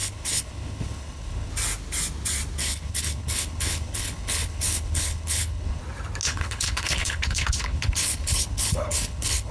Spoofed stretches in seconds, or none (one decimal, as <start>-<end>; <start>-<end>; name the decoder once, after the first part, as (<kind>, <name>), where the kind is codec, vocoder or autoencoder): 0.0-1.5 (codec, HILCodec); 2.6-5.8; 6.2-9.5

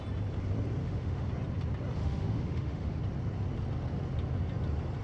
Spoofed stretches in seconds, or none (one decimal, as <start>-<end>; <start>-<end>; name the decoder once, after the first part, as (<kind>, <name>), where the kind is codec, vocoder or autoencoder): 0.8-1.3 (autoencoder, DAC-VAE); 2.0-3.0

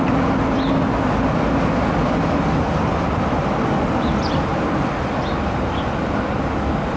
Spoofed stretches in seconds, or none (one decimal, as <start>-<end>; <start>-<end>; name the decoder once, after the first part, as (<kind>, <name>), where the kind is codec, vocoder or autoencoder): none

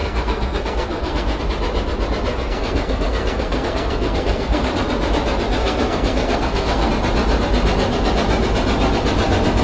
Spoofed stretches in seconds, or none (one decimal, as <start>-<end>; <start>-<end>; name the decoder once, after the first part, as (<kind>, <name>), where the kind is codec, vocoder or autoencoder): 0.0-1.4 (codec, SNAC); 2.3-4.7; 5.6-6.9

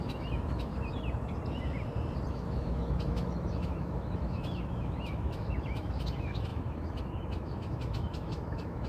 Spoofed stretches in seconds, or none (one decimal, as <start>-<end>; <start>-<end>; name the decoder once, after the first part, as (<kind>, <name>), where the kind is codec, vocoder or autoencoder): 0.0-0.7 (autoencoder, DAC-VAE); 2.3-8.9

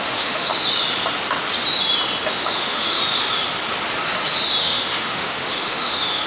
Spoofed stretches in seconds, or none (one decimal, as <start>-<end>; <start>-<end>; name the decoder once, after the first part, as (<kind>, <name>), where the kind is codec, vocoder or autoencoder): 0.0-0.5 (autoencoder, DAC-VAE); 2.3-3.0; 4.6-6.3